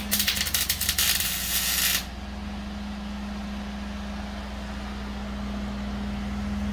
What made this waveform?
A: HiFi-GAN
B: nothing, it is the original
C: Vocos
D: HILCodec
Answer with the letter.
B